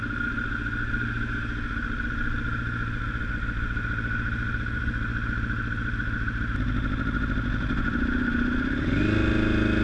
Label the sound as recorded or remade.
recorded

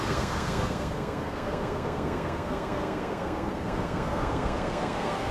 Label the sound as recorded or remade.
remade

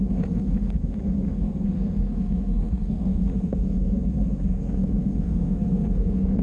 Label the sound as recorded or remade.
remade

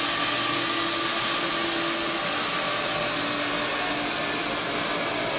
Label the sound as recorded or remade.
recorded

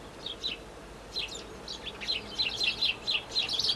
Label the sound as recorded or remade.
recorded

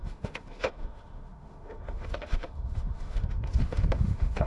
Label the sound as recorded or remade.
remade